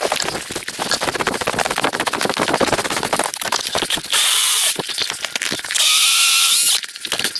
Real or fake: real